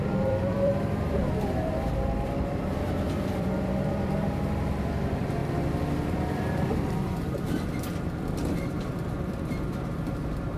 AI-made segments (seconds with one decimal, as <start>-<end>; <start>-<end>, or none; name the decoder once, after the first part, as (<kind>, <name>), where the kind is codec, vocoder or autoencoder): 0.0-5.4 (vocoder, BigVGAN v2); 6.1-10.6